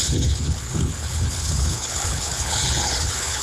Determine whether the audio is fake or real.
fake